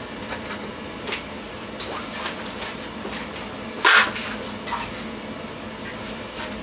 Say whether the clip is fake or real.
real